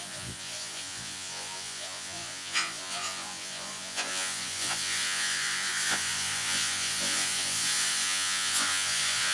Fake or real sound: fake